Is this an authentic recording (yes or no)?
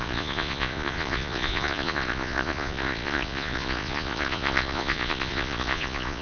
no